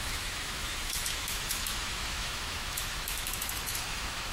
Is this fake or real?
fake